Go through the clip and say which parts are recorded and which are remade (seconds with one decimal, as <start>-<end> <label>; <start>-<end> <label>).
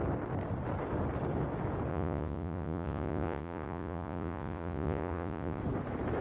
0.0-1.9 recorded; 1.9-5.6 remade; 5.6-6.2 recorded